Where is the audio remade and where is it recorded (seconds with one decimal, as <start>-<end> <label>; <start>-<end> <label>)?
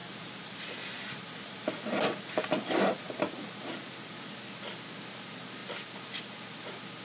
0.0-4.2 remade; 4.2-7.0 recorded